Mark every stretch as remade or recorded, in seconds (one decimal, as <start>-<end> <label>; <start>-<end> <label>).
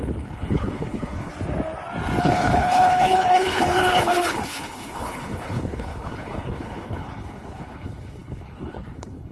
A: 0.0-1.3 remade; 1.3-2.2 recorded; 2.2-9.3 remade